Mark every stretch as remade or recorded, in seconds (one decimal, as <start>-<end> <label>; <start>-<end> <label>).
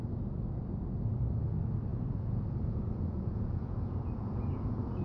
0.0-1.9 recorded; 1.9-5.0 remade